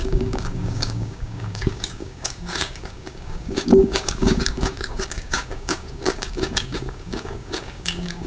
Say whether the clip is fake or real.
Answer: fake